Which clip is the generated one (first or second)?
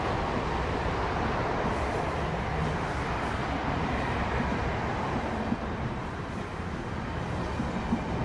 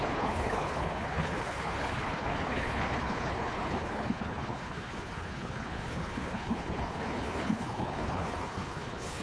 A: second